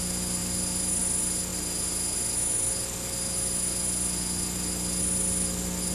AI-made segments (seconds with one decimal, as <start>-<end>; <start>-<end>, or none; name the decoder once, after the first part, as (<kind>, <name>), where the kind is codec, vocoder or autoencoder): none